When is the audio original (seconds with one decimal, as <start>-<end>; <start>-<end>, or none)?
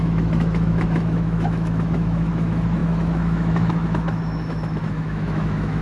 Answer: none